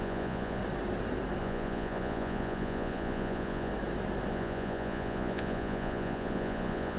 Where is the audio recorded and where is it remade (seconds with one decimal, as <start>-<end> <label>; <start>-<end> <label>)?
0.0-0.6 remade; 0.6-1.4 recorded; 1.4-3.7 remade; 3.7-4.3 recorded; 4.3-7.0 remade